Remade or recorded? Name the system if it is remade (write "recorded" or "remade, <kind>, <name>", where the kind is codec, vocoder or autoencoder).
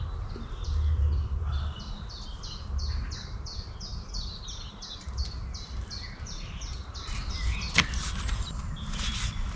recorded